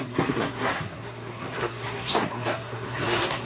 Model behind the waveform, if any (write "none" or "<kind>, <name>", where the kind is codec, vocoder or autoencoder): codec, SNAC